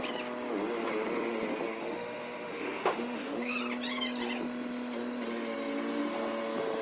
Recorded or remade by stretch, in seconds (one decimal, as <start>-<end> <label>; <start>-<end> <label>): 0.0-1.8 recorded; 1.8-3.6 remade; 3.6-6.8 recorded